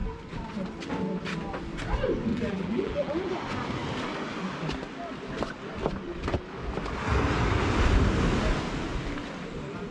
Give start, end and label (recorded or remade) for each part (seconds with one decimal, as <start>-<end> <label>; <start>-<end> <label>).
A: 0.0-2.3 recorded; 2.3-3.3 remade; 3.3-9.9 recorded